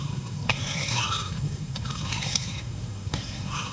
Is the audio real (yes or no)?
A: no